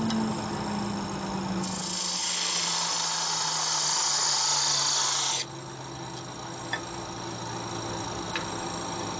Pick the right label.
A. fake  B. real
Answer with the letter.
B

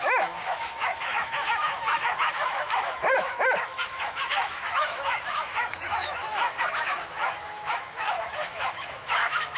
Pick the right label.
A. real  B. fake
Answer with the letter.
B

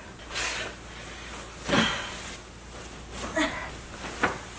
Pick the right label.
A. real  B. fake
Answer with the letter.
A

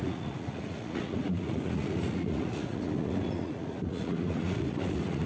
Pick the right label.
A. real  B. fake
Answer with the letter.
B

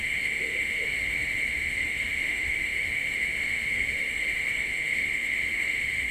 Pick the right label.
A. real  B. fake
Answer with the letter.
B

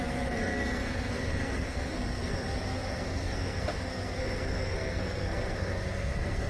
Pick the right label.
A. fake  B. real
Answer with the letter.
A